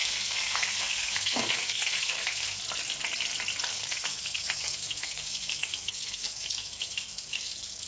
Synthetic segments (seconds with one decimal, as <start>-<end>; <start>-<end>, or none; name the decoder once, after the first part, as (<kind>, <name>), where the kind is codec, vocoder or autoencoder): 0.0-2.6 (codec, SNAC); 3.7-7.9